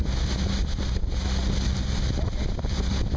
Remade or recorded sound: recorded